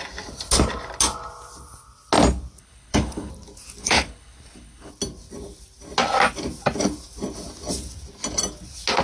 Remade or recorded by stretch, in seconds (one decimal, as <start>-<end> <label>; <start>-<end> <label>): 0.0-2.6 recorded; 2.6-3.3 remade; 3.3-3.8 recorded; 3.8-4.9 remade; 4.9-9.0 recorded